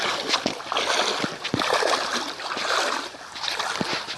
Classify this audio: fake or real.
real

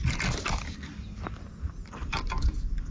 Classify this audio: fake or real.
real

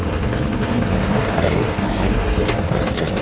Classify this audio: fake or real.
fake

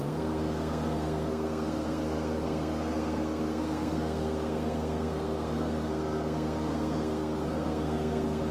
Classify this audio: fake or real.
fake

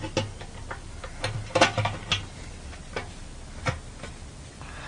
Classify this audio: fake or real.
real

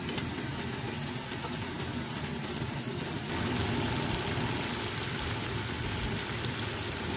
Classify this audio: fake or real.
real